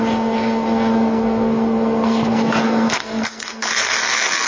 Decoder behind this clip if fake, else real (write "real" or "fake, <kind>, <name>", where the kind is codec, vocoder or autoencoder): fake, codec, SNAC